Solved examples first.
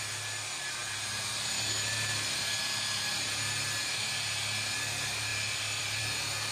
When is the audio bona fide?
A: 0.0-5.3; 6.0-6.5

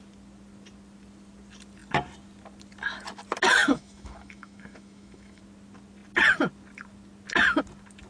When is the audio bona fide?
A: 0.0-3.6; 5.4-8.1

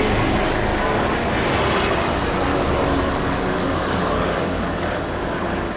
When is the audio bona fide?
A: 0.0-0.7; 1.3-2.5

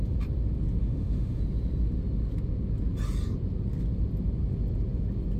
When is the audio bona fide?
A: 0.0-0.8; 1.4-5.4

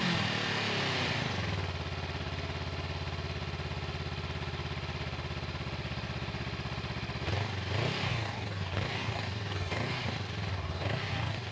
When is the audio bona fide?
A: 0.0-8.1; 10.0-10.5